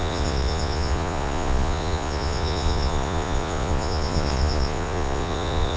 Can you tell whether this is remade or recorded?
remade